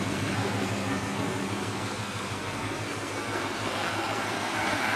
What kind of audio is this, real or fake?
fake